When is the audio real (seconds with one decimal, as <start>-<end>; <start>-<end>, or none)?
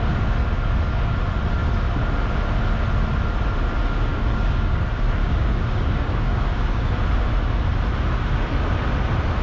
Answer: 0.0-4.1; 4.8-5.2; 6.9-9.4